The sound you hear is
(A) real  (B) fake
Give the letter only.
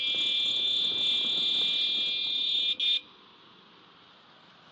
A